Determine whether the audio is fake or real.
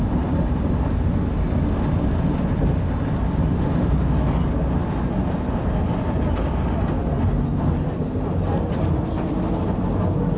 real